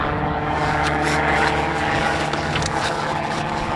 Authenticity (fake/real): fake